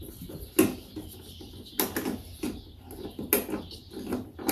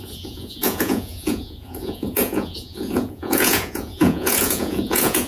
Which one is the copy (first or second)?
second